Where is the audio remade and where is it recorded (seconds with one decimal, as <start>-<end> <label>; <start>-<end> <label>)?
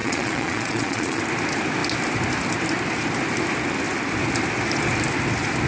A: 0.0-1.2 remade; 1.2-5.7 recorded